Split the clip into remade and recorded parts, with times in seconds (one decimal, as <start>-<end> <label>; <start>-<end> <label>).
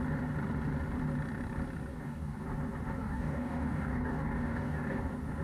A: 0.0-1.9 recorded; 1.9-2.4 remade; 2.4-3.0 recorded; 3.0-5.0 remade; 5.0-5.4 recorded